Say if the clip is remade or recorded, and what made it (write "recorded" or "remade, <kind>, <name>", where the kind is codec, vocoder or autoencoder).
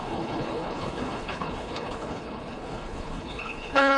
remade, codec, HILCodec